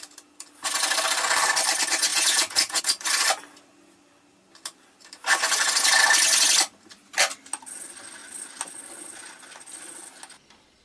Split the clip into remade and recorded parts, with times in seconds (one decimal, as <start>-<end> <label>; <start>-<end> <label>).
0.0-2.1 recorded; 2.1-2.8 remade; 2.8-10.8 recorded